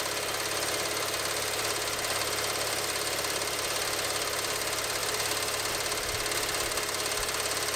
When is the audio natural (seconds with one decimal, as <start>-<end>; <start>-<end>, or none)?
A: 0.0-7.8